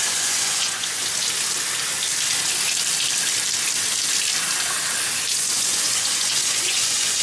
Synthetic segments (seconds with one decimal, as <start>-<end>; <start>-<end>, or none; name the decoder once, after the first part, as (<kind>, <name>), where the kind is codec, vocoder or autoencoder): 0.0-1.0 (vocoder, Vocos); 5.3-7.2